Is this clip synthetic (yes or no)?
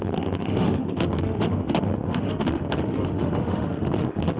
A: yes